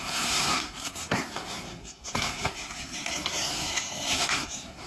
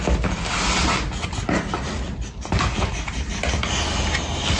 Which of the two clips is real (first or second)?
second